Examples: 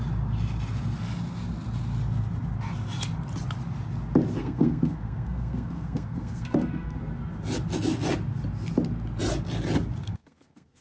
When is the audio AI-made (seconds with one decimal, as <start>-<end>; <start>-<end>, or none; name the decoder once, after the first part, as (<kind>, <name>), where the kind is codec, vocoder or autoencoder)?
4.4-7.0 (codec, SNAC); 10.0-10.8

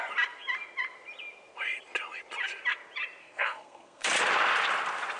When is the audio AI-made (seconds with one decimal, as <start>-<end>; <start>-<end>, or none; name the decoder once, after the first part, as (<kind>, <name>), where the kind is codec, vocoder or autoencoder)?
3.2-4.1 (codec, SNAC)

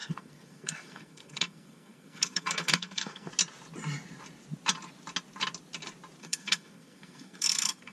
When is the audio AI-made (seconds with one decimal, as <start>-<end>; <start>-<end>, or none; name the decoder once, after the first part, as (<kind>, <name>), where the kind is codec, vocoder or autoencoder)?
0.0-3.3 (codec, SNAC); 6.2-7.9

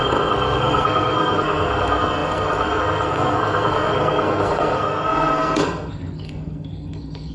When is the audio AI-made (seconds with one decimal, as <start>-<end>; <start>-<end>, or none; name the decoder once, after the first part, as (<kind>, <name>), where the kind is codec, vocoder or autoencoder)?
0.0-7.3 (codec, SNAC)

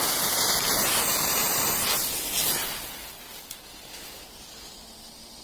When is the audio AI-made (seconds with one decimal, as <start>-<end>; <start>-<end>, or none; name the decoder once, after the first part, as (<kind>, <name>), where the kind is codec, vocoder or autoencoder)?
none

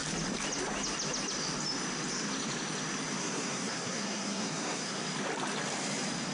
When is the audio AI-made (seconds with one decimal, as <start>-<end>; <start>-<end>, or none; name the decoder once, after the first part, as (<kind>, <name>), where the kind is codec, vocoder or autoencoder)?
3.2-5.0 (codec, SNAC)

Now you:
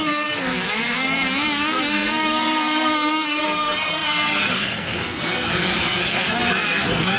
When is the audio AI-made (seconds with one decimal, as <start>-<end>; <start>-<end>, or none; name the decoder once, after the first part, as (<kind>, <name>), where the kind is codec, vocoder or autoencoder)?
0.0-7.2 (codec, SNAC)